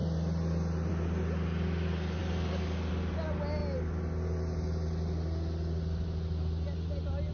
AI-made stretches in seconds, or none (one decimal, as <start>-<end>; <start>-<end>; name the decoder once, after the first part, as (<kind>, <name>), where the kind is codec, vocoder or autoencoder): none